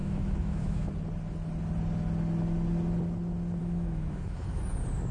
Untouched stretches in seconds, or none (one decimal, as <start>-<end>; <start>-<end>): 0.9-3.6; 4.6-5.1